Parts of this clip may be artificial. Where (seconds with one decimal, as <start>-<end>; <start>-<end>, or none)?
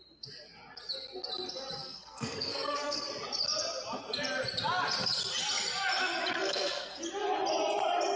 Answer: 1.8-3.1; 6.3-7.0